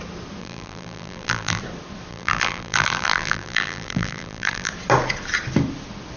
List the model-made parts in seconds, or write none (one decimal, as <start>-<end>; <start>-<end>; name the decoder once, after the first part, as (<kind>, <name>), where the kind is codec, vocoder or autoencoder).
0.4-1.6 (vocoder, BigVGAN v2); 2.1-4.7